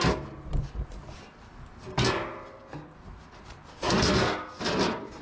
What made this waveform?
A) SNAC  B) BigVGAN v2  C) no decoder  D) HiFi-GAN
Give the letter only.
C